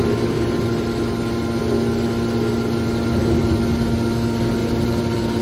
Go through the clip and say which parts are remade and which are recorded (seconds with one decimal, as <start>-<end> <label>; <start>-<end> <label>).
0.0-4.6 recorded; 4.6-5.4 remade